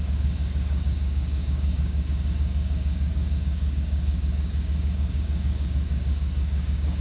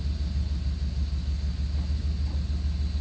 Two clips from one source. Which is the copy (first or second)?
first